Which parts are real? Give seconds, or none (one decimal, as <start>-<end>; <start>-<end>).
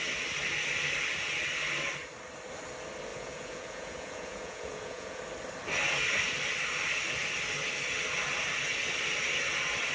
0.0-3.1; 5.2-9.9